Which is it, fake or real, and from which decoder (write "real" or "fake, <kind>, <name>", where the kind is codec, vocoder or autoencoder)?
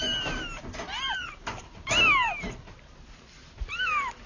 real